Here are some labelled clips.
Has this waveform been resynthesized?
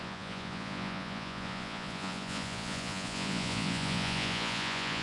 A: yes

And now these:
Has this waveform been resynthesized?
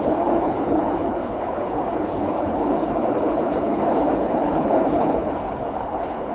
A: yes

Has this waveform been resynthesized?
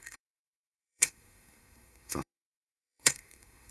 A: yes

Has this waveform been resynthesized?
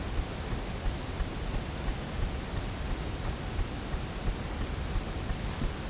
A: no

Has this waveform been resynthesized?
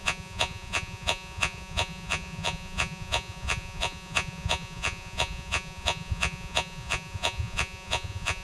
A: yes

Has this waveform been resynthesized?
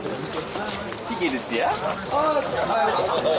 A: no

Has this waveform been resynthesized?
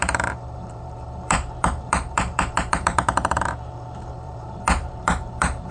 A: yes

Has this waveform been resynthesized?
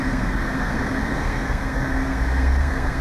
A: yes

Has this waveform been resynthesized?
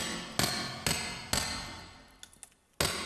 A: no